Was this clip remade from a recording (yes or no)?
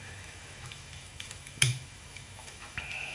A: yes